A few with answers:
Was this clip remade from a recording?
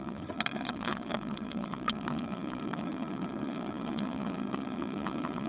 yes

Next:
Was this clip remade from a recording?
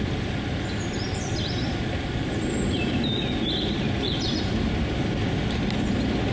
no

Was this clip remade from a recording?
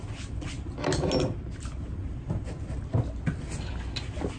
no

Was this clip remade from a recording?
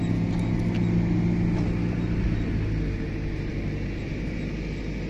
no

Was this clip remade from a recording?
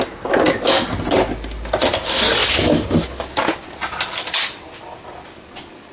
no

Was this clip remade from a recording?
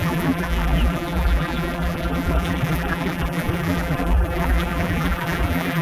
yes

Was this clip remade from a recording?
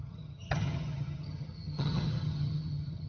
yes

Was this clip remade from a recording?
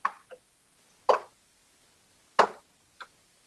no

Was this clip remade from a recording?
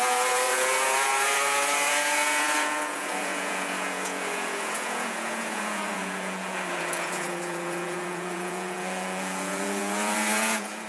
yes